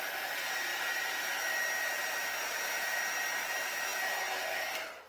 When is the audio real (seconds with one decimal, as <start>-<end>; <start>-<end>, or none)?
0.0-5.1

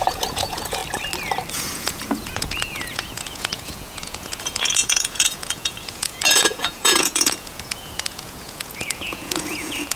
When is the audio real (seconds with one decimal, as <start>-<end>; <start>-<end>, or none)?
0.8-1.5

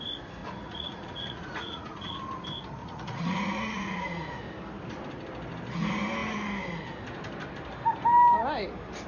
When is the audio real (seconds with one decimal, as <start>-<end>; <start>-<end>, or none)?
0.0-0.4; 2.4-2.8; 4.4-9.1

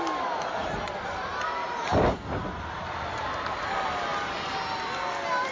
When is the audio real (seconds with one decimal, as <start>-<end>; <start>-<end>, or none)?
0.0-5.5